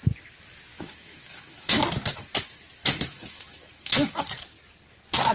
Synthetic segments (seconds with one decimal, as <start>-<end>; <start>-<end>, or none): 0.7-1.8; 2.8-4.2